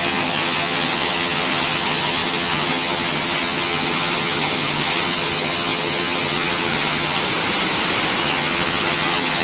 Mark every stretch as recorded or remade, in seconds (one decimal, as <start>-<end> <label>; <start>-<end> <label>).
0.0-7.2 remade; 7.2-8.2 recorded; 8.2-9.4 remade